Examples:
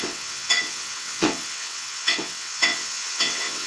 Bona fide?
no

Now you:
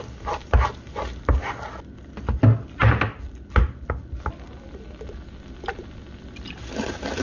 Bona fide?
yes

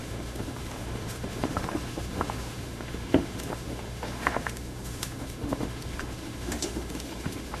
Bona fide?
no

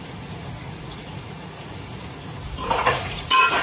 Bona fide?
no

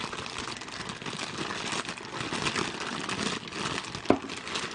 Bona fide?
yes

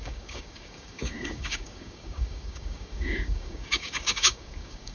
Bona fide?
no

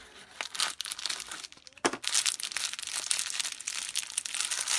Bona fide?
yes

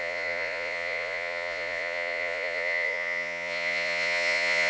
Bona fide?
no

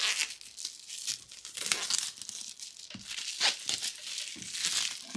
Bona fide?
yes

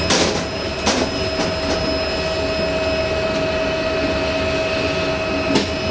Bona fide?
yes